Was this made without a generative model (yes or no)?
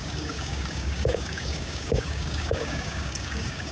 no